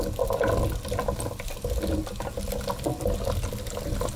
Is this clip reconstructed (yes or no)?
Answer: no